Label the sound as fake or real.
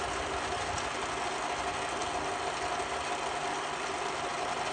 real